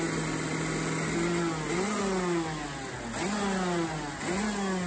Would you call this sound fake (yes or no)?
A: no